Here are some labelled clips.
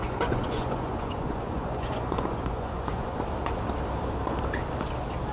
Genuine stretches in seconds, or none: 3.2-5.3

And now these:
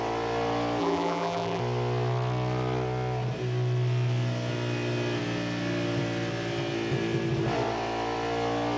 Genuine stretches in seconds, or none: 0.0-0.8; 1.6-8.8

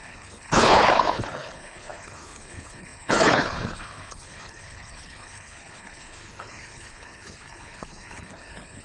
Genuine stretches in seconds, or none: none

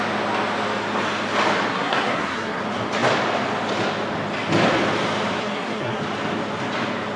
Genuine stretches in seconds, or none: 0.0-1.7; 2.6-5.4; 6.0-7.2

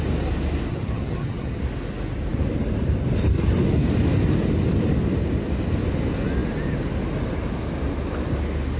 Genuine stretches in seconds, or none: 0.0-0.7; 1.6-8.8

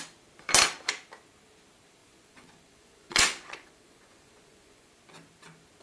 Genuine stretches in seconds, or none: 0.0-2.0; 4.9-5.8

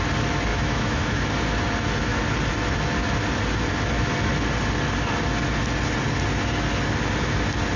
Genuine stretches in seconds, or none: 0.0-0.5; 1.2-7.8

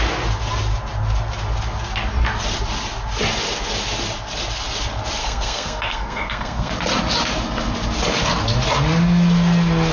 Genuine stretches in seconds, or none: 0.0-5.2; 6.7-9.9